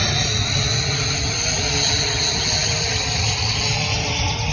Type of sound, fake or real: real